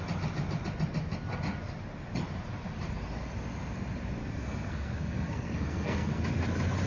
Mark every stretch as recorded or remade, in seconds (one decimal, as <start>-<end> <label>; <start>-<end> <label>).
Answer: 0.0-4.2 recorded; 4.2-6.2 remade; 6.2-6.9 recorded